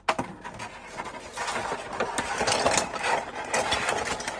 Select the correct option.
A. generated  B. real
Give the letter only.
B